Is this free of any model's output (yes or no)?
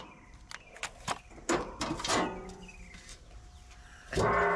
yes